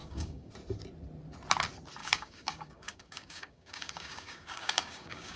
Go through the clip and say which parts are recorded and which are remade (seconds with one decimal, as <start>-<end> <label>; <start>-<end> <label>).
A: 0.0-0.5 remade; 0.5-2.0 recorded; 2.0-5.4 remade